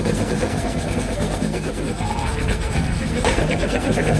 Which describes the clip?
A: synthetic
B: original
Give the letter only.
A